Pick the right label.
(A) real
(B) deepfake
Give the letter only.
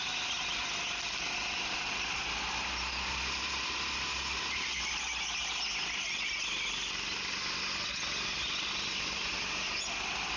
A